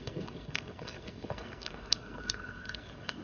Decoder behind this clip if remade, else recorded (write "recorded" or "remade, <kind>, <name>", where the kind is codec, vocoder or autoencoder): remade, codec, SNAC